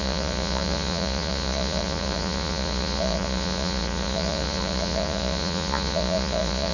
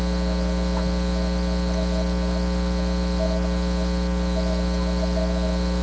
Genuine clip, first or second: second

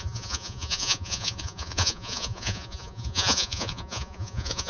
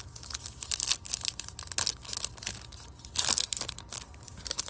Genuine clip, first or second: second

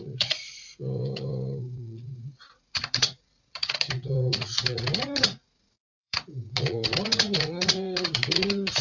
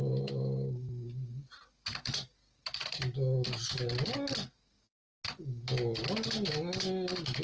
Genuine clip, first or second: second